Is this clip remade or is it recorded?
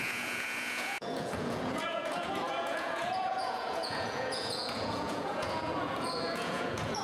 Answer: remade